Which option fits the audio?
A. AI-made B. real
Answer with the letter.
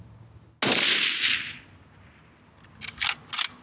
B